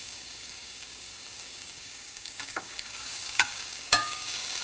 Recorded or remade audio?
remade